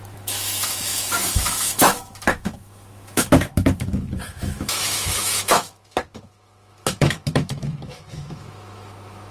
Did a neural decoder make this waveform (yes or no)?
yes